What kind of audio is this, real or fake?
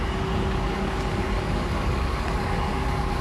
fake